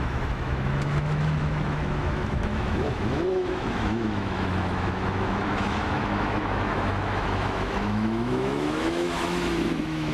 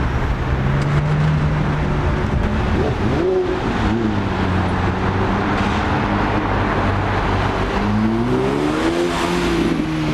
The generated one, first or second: first